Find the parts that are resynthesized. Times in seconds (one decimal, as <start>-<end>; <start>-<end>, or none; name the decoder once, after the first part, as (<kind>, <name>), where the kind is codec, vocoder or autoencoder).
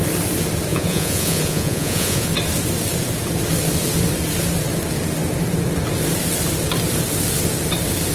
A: 0.7-2.3 (vocoder, Vocos)